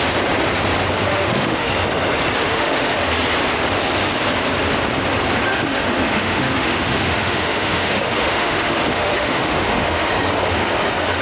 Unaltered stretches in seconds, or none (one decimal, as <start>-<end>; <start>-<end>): 0.0-1.1; 1.7-2.5; 3.0-5.5; 10.1-11.2